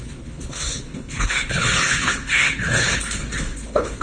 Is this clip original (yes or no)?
no